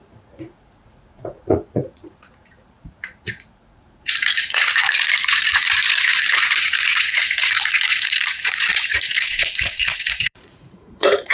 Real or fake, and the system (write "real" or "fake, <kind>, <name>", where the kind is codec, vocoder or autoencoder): fake, vocoder, Vocos